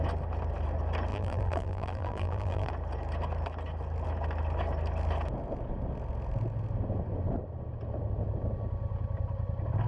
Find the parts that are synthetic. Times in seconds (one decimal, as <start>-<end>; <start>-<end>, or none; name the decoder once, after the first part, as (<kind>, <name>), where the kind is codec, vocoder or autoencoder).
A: 1.1-2.7 (vocoder, BigVGAN v2)

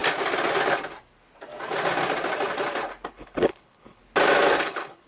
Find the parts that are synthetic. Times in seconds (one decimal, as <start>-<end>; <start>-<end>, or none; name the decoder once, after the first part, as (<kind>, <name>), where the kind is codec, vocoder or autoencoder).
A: 3.1-4.0 (codec, HILCodec); 4.6-5.1

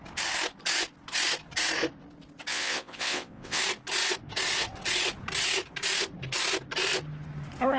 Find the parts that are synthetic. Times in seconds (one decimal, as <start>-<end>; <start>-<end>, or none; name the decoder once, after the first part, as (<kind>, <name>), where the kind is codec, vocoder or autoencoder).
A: 2.5-3.6 (vocoder, WaveNeXt)

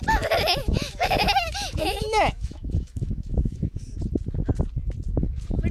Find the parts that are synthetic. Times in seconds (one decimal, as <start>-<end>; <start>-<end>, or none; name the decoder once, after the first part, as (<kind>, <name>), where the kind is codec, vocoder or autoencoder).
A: 0.6-3.8 (autoencoder, DAC-VAE)